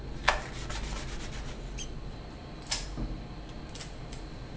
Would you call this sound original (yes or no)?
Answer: yes